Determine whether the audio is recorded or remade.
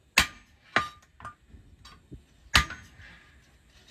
recorded